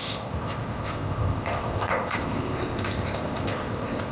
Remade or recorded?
remade